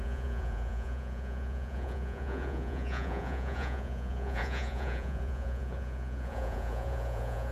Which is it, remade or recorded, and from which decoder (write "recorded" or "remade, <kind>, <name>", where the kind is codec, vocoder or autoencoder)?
remade, vocoder, Vocos